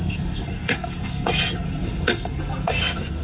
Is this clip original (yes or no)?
no